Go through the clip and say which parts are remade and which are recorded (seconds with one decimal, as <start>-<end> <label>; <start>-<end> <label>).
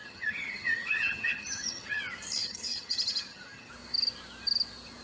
0.0-2.0 remade; 2.0-2.4 recorded; 2.4-3.7 remade; 3.7-5.0 recorded